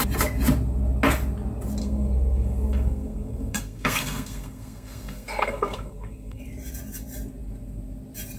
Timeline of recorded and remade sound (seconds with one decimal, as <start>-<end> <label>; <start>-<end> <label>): 0.0-1.8 recorded; 1.8-6.4 remade; 6.4-8.4 recorded